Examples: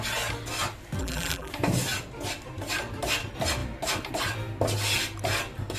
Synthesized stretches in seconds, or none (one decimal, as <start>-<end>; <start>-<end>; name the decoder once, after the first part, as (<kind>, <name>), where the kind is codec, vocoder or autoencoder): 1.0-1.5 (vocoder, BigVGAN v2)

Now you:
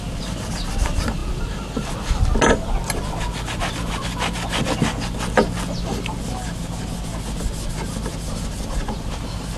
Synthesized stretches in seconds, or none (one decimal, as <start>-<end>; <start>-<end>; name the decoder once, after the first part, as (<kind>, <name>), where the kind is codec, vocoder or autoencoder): none

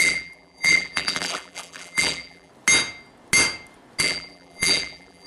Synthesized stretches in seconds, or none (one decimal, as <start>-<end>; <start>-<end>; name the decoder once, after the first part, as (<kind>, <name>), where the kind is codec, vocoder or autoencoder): 0.0-2.5 (vocoder, BigVGAN v2); 4.0-5.3

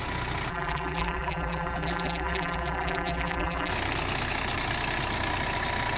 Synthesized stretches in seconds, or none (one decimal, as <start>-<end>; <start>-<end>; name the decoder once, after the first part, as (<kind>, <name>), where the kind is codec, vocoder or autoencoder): 0.5-3.7 (vocoder, BigVGAN v2)